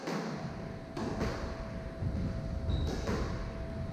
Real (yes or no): yes